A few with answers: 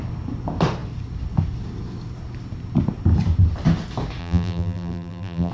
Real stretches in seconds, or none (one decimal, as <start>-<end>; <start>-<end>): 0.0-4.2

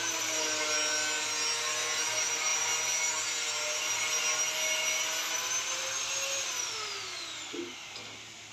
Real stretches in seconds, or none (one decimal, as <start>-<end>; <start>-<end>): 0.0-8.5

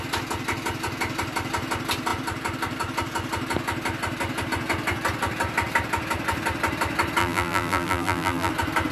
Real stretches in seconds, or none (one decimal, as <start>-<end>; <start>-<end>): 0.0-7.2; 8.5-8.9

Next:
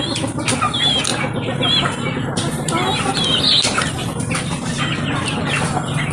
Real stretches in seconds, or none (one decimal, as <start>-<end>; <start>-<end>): 0.0-6.1

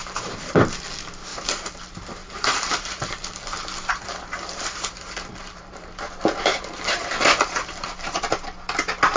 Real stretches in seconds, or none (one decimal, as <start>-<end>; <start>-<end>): 0.5-1.3; 1.8-2.2; 6.0-6.5; 8.2-9.2

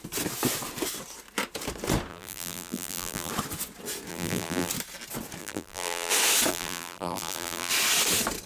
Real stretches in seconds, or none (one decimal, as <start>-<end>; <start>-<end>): 0.0-2.1; 3.3-4.1; 4.7-5.4; 6.1-6.5; 7.7-8.5

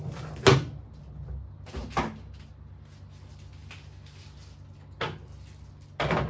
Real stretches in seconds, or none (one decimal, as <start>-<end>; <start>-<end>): 0.0-6.3

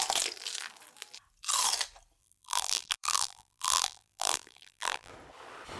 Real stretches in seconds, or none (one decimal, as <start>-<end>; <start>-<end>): 0.0-2.2; 5.1-5.8